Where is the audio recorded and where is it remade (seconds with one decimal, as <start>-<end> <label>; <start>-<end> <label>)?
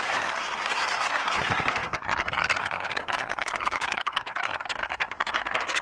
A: 0.0-5.8 remade